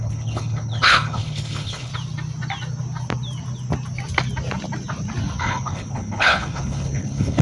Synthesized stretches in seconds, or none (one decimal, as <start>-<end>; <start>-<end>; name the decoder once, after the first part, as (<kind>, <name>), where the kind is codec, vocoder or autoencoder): 0.0-1.9 (codec, HILCodec); 5.4-7.4